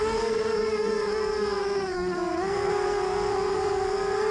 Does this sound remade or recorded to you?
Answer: remade